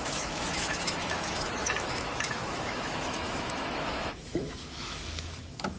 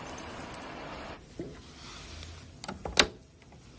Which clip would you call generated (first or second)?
first